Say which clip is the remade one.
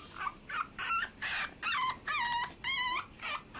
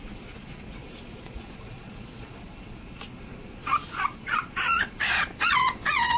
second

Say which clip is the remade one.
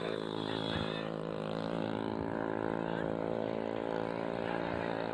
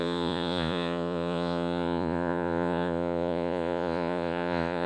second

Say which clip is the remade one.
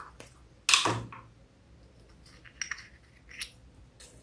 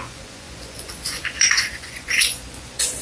second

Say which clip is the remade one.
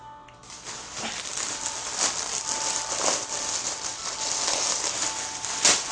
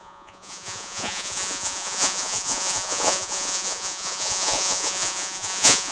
second